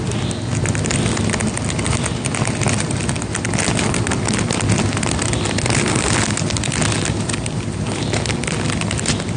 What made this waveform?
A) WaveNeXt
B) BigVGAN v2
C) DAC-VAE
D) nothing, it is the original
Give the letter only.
D